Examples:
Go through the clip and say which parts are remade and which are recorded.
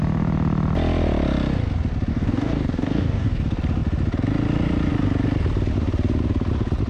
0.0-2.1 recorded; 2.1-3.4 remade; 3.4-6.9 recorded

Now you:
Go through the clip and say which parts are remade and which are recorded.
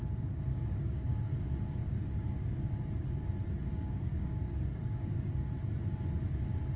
0.0-0.5 recorded; 0.5-1.4 remade; 1.4-1.8 recorded; 1.8-2.7 remade; 2.7-3.7 recorded; 3.7-5.5 remade; 5.5-6.8 recorded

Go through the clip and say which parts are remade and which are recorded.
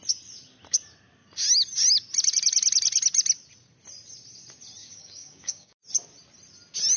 0.0-4.8 recorded; 4.8-5.8 remade; 5.8-7.0 recorded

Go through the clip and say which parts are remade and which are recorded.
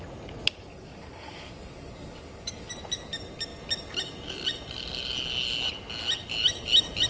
0.0-0.7 recorded; 0.7-2.7 remade; 2.7-7.1 recorded